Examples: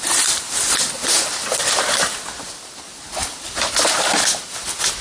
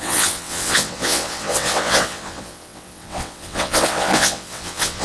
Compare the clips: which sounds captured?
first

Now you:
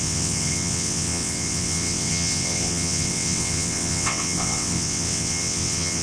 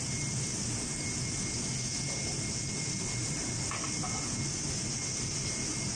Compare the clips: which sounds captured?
second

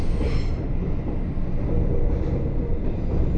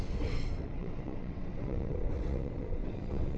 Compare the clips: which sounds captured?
first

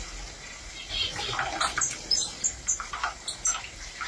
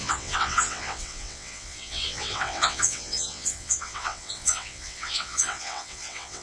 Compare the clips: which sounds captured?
first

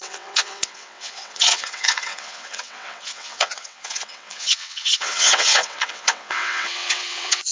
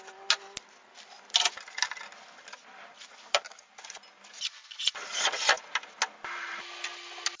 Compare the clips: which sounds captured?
second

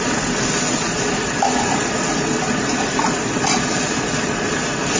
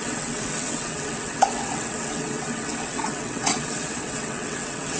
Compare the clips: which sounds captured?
first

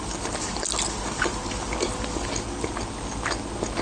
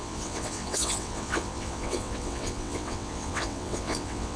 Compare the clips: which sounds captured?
first